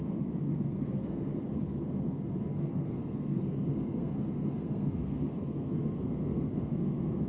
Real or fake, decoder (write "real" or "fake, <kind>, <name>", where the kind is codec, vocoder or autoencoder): fake, codec, SNAC